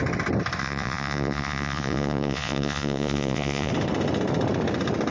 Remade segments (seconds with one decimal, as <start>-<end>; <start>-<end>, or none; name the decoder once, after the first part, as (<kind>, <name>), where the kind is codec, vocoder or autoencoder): 0.6-3.7 (vocoder, Vocos)